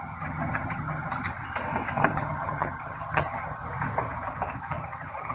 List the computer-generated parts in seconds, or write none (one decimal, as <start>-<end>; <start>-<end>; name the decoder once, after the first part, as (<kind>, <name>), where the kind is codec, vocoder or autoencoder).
0.0-1.3 (vocoder, HiFi-GAN); 2.1-3.6; 4.6-5.3